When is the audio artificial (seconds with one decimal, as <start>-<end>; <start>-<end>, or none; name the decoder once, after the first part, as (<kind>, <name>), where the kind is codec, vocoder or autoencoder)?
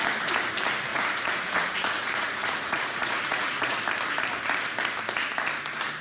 0.9-3.8 (vocoder, Vocos)